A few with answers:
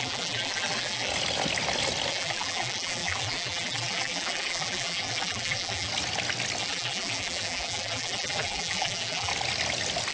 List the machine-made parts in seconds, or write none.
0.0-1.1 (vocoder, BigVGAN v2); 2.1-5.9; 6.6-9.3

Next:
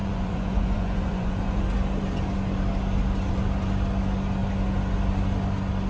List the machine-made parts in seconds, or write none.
0.0-1.6 (vocoder, Vocos)

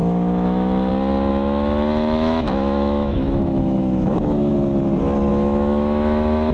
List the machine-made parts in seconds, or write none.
0.0-0.9 (autoencoder, DAC-VAE); 1.3-4.5; 5.3-6.5

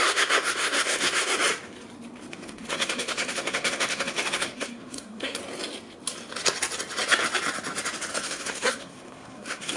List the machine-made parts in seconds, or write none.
0.0-1.4 (codec, SNAC); 2.3-5.4; 8.1-9.8

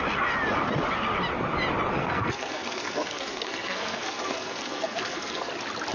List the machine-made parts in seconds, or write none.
2.0-5.5 (codec, SNAC)

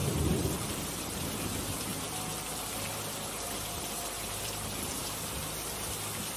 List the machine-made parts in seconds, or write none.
0.8-1.9 (vocoder, BigVGAN v2); 2.9-6.4

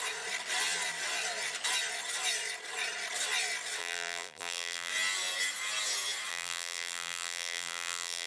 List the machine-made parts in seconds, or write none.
3.8-4.9 (vocoder, BigVGAN v2); 6.3-8.3